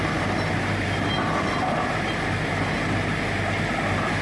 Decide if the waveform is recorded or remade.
recorded